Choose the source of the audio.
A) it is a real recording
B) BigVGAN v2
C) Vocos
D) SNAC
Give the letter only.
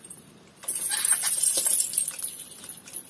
B